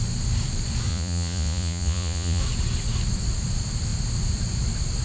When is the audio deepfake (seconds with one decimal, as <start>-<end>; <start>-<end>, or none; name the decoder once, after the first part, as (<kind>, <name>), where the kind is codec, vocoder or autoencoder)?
0.9-2.4 (vocoder, Vocos)